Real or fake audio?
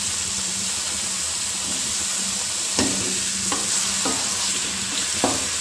real